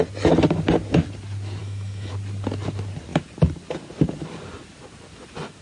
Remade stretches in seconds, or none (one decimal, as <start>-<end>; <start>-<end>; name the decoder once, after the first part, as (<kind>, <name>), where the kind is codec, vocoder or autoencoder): 1.6-2.1 (autoencoder, DAC-VAE)